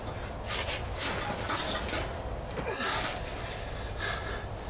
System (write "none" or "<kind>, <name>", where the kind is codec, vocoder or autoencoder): none